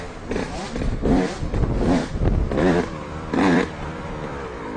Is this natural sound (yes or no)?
no